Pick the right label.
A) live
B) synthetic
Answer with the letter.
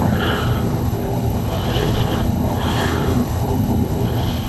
B